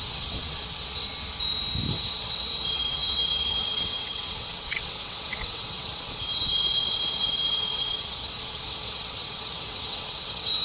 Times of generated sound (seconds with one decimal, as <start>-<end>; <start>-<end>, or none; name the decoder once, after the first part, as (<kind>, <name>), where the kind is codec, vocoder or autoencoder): 0.0-1.1 (vocoder, WaveNeXt); 1.9-10.6